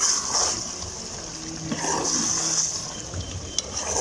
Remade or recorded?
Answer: recorded